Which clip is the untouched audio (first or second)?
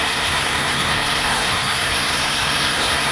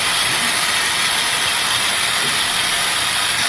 second